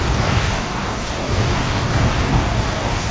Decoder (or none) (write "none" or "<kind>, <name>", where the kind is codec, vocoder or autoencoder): codec, DAC